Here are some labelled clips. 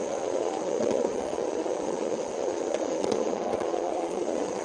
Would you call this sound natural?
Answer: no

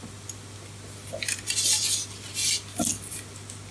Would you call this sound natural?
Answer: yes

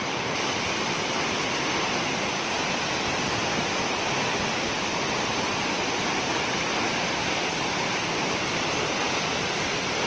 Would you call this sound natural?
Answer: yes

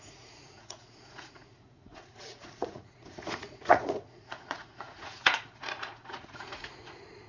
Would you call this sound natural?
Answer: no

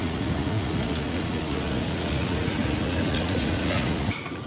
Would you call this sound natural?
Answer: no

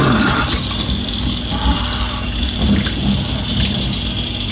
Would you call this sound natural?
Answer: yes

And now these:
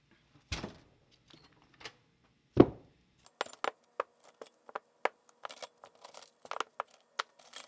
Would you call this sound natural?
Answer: yes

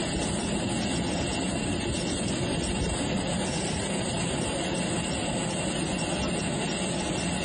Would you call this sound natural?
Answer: yes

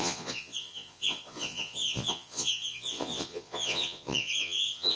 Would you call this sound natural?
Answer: no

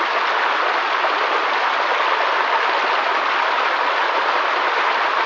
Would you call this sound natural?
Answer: yes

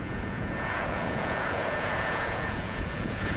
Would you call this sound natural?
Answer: no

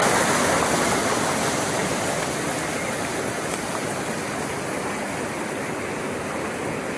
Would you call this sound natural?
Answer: yes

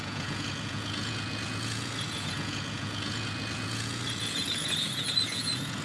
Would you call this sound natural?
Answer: no